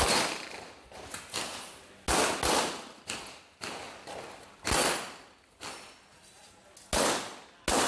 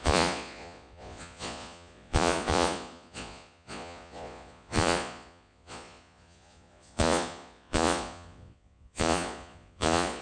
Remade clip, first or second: second